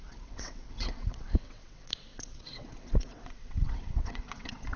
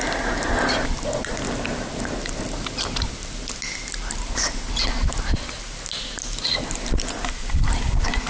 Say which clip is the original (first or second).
second